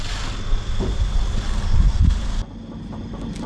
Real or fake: real